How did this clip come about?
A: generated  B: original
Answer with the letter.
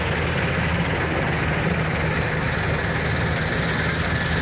B